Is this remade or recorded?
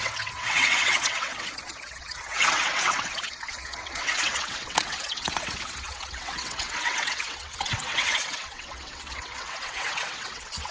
remade